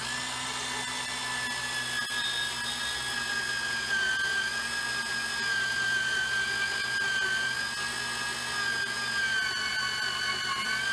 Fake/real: real